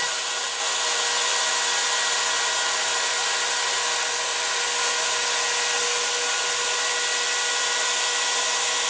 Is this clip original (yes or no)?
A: yes